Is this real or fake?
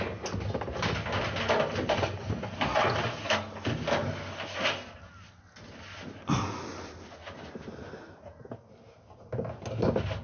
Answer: real